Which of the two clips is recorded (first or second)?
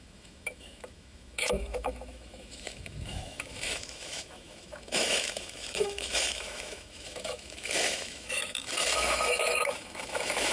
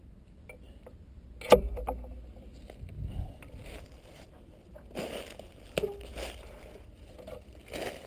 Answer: second